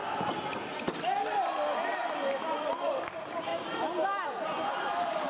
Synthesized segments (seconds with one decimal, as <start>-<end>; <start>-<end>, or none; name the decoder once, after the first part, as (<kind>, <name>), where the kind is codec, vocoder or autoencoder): 2.5-3.5 (vocoder, BigVGAN v2); 4.4-5.3